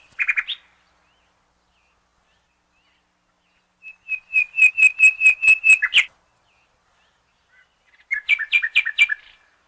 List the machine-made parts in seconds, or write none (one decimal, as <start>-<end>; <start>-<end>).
none